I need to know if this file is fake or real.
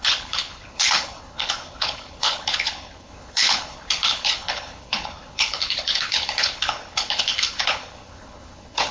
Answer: fake